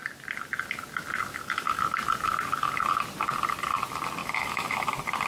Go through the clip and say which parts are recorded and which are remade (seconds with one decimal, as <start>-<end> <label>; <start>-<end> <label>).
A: 0.0-1.3 recorded; 1.3-1.8 remade; 1.8-4.2 recorded; 4.2-4.8 remade; 4.8-5.3 recorded